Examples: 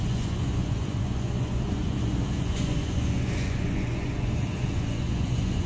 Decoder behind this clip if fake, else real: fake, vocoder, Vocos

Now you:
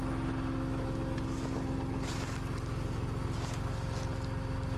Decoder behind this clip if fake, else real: real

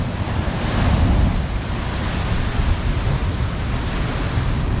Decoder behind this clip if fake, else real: real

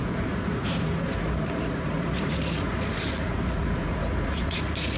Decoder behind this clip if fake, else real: fake, vocoder, Vocos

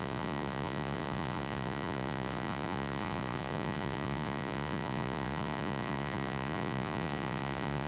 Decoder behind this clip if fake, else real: fake, vocoder, Vocos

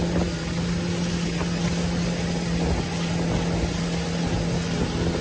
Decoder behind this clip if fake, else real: real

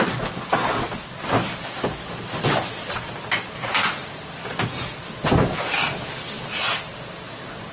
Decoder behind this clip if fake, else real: real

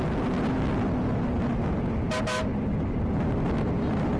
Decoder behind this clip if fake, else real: real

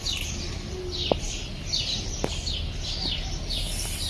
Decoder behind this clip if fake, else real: real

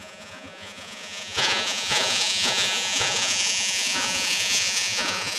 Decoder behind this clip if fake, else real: fake, vocoder, Vocos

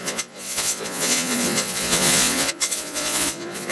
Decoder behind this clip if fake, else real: fake, vocoder, Vocos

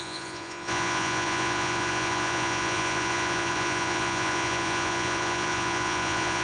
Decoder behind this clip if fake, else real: fake, vocoder, Vocos